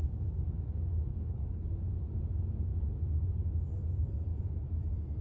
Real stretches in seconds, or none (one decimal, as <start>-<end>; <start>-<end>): 0.0-1.1; 1.7-5.2